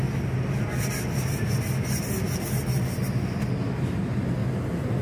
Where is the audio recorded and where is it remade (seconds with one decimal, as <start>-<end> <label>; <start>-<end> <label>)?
0.0-5.0 recorded